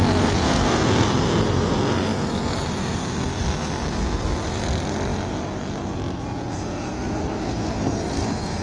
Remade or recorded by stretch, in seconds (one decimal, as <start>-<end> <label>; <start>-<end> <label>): 0.0-8.6 recorded